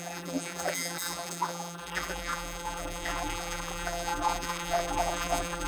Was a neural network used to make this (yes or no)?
yes